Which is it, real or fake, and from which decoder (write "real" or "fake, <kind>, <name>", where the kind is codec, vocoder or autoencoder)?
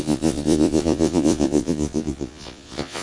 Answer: fake, vocoder, Vocos